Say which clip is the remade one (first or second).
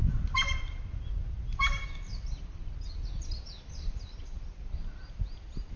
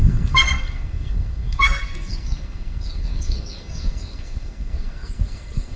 second